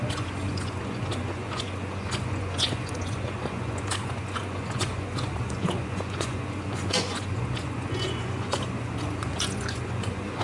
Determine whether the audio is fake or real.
fake